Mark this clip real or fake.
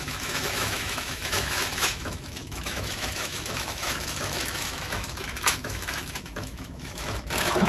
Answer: fake